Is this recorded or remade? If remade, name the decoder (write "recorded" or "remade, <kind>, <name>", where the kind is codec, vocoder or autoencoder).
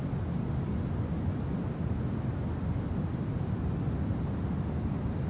recorded